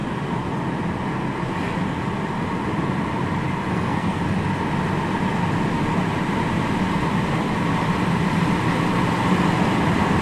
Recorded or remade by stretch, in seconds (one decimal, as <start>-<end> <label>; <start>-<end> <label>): 0.0-3.7 recorded; 3.7-4.2 remade; 4.2-10.2 recorded